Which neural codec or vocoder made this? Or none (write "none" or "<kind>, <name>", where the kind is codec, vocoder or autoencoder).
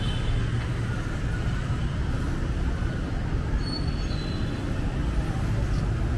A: none